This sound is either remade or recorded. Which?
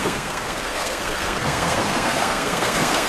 remade